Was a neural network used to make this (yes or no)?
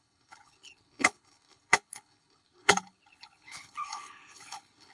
yes